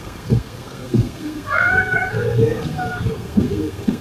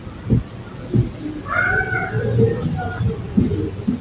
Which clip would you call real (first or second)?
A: second